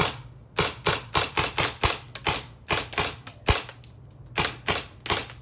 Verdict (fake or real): real